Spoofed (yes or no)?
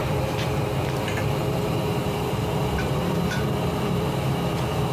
yes